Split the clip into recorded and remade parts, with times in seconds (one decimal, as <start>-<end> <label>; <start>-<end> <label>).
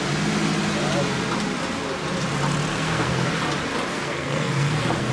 0.0-2.7 recorded; 2.7-3.3 remade; 3.3-3.9 recorded; 3.9-5.1 remade